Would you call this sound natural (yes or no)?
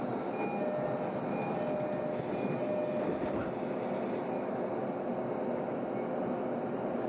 yes